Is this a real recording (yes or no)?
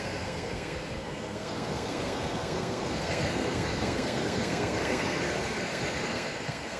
no